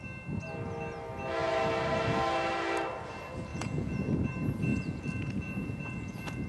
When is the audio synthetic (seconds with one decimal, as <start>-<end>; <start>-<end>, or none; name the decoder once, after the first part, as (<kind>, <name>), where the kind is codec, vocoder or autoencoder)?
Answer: 3.5-4.1 (vocoder, Vocos); 4.7-6.5